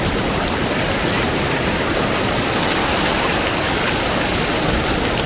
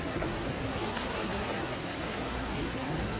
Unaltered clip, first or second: first